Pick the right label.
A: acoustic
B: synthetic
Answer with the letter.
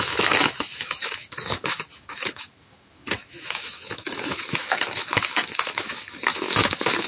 B